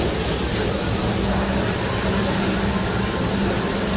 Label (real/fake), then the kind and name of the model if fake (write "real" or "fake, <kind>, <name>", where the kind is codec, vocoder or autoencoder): real